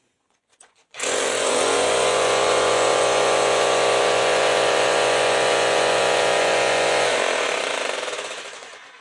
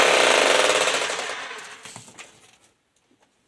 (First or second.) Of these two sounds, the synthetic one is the first